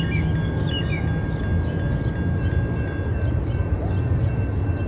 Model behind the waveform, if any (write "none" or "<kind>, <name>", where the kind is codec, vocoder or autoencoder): none